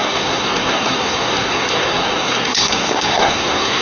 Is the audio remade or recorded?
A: remade